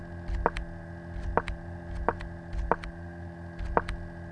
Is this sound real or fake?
real